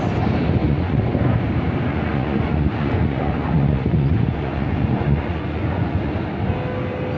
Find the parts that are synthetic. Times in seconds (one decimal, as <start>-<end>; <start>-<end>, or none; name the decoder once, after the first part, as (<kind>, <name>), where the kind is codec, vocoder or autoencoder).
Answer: 0.6-1.1 (vocoder, Vocos); 1.9-6.1